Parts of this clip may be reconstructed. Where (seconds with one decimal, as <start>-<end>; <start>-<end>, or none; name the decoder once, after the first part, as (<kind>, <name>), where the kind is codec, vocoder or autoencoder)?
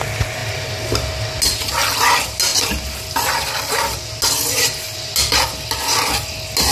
none